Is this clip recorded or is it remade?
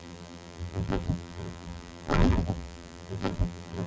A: remade